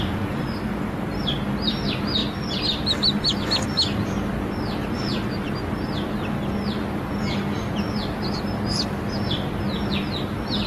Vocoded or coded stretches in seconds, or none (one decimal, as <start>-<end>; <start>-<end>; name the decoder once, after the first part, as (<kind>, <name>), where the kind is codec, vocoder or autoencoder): none